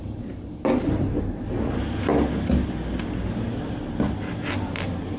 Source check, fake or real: real